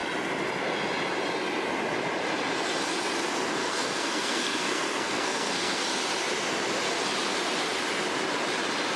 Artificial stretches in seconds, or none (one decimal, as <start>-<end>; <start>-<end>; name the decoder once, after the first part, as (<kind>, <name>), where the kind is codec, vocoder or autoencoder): 3.6-5.8 (codec, SNAC)